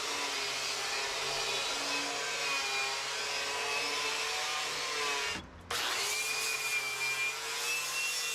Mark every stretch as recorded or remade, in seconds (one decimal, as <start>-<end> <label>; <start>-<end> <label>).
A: 0.0-8.3 recorded